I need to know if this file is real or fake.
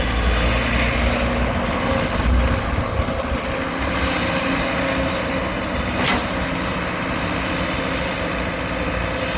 real